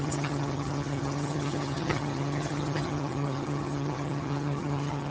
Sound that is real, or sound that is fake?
fake